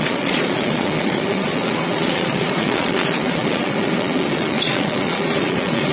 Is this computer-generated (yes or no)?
yes